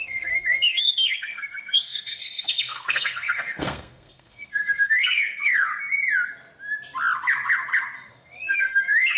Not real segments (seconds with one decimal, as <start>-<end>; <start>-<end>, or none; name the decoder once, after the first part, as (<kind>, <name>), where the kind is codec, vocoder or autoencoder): 0.0-5.7 (codec, SNAC); 8.1-9.2